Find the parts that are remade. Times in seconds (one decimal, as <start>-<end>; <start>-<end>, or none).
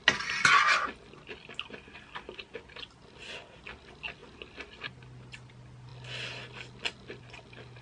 none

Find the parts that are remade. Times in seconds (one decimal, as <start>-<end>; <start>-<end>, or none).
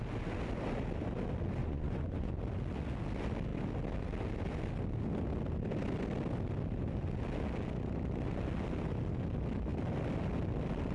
1.6-2.3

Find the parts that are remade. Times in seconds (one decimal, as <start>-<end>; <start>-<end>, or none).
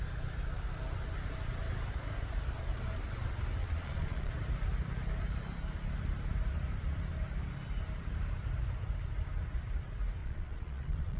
3.6-4.3; 10.2-11.2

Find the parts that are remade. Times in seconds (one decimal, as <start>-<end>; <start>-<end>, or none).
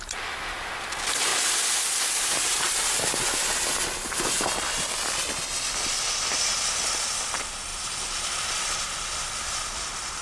none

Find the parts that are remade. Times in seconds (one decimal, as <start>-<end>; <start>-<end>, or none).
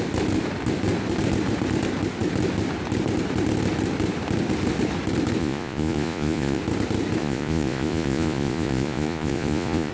5.4-6.6; 7.2-9.9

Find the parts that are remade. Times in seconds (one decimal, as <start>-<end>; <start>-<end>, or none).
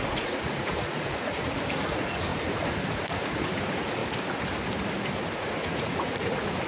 0.0-4.0; 5.2-6.7